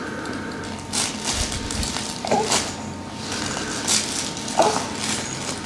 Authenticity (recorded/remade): recorded